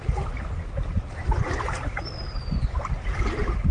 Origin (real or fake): real